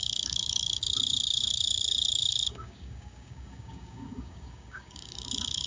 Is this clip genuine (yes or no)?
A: no